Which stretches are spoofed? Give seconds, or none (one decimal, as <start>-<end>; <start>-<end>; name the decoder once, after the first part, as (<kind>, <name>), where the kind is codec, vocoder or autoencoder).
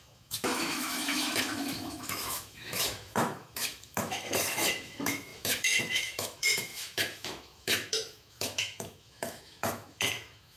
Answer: 0.0-10.6 (autoencoder, DAC-VAE)